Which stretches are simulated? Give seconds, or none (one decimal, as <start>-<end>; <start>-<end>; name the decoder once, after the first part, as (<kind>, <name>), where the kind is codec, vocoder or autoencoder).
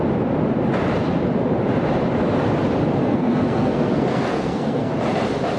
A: 3.0-4.9 (codec, SNAC)